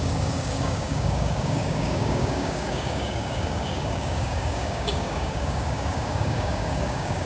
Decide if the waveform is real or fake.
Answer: fake